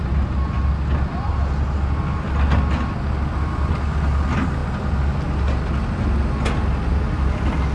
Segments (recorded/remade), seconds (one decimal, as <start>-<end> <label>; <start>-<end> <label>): 0.0-7.7 recorded

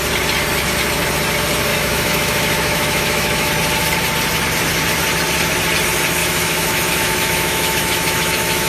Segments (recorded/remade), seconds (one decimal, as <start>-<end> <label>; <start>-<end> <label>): 0.0-1.7 recorded; 1.7-3.5 remade; 3.5-6.2 recorded; 6.2-8.7 remade

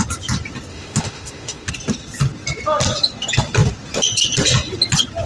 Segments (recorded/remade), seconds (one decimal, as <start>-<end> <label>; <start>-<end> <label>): 0.0-0.7 recorded; 0.7-1.7 remade; 1.7-5.3 recorded

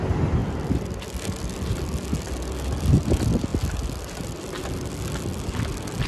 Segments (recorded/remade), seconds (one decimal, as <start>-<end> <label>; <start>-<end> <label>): 0.0-6.1 recorded

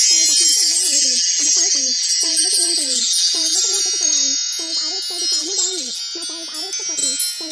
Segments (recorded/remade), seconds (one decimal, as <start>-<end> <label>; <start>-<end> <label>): 0.0-0.5 recorded; 0.5-3.8 remade; 3.8-5.4 recorded; 5.4-6.0 remade; 6.0-7.5 recorded

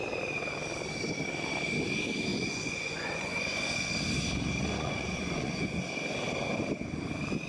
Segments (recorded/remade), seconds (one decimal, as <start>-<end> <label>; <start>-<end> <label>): 0.0-2.3 recorded; 2.3-3.9 remade; 3.9-4.6 recorded; 4.6-5.8 remade; 5.8-7.5 recorded